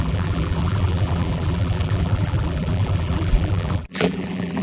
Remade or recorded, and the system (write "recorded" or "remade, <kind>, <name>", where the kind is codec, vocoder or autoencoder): remade, vocoder, BigVGAN v2